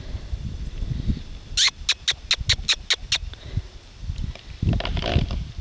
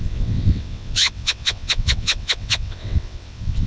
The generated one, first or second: second